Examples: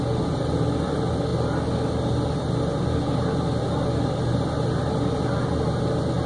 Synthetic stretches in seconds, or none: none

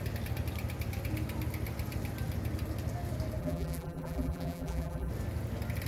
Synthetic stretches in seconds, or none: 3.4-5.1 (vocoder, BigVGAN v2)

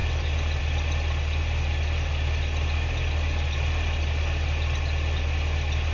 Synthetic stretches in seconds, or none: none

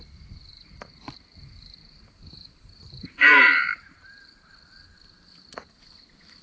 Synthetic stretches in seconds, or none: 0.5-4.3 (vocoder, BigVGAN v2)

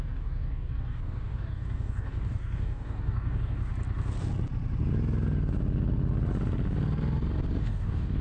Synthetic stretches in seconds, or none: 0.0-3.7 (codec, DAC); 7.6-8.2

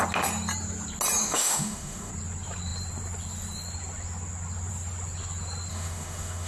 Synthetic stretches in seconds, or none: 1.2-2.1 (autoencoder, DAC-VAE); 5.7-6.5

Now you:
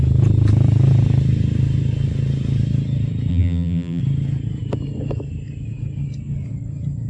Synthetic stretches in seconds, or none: 3.3-4.0 (vocoder, BigVGAN v2)